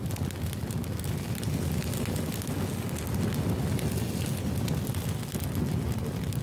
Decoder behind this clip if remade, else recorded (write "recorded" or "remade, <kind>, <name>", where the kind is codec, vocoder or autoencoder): recorded